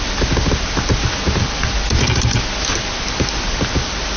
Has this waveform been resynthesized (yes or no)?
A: no